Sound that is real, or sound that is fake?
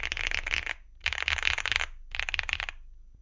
real